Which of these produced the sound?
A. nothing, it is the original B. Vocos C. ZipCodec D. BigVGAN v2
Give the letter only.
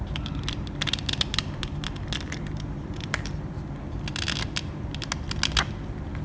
A